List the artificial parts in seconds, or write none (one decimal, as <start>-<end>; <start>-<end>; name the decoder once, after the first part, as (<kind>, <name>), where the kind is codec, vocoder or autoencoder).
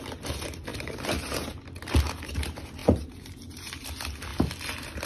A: 0.7-1.6 (vocoder, BigVGAN v2); 2.8-3.9